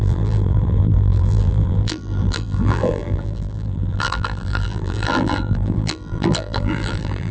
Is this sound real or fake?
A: fake